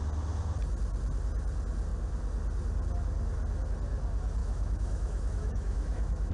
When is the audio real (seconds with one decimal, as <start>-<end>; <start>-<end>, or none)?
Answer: 0.0-4.4